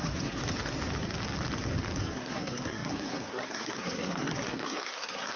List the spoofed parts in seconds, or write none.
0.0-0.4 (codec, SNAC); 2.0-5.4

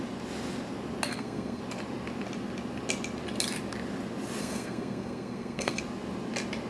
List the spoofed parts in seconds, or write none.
1.1-1.6 (codec, SNAC); 4.4-5.8

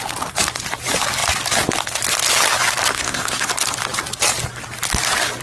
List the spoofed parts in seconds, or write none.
2.9-3.5 (codec, SNAC)

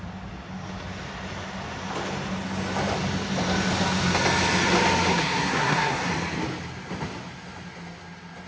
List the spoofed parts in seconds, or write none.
5.1-6.1 (codec, SNAC)

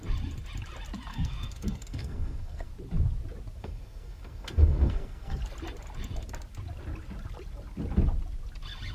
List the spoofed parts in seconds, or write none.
1.1-2.7 (codec, SNAC); 3.6-5.4

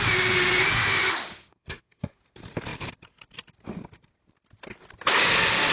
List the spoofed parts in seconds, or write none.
1.5-2.2 (codec, SNAC)